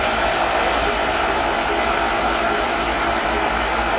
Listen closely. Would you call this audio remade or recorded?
recorded